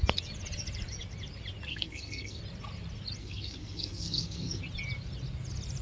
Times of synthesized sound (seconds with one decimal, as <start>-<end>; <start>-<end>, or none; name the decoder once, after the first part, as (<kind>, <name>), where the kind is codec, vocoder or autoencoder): 1.7-2.4 (codec, SNAC); 3.2-4.6